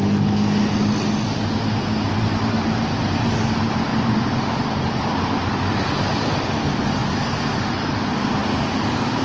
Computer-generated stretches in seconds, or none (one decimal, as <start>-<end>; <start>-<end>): none